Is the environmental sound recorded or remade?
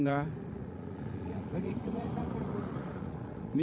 remade